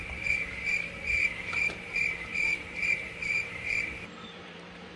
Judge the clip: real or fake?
fake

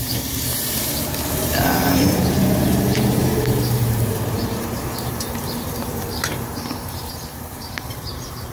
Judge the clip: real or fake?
fake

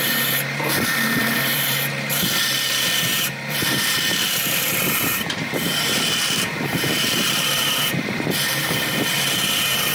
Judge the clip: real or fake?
fake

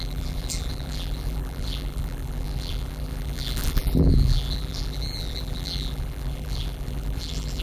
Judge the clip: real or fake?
fake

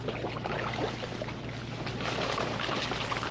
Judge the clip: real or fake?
real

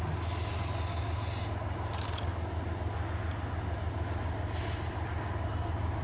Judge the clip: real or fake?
real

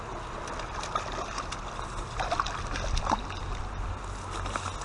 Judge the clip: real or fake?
real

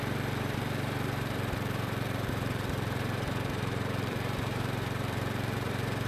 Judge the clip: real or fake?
fake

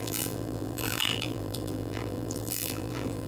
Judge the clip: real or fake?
fake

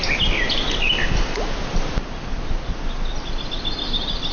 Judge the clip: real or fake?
real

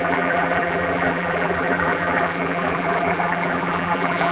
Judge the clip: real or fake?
fake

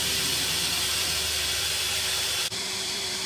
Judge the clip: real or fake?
fake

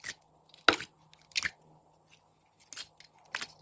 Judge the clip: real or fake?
real